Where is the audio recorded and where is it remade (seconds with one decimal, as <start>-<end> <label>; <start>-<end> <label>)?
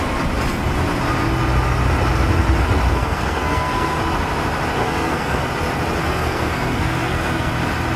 0.0-2.9 recorded; 2.9-4.0 remade; 4.0-4.8 recorded; 4.8-5.5 remade; 5.5-6.0 recorded; 6.0-7.5 remade; 7.5-8.0 recorded